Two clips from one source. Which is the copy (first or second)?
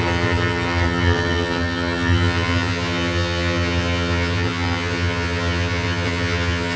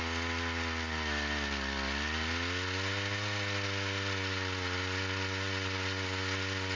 first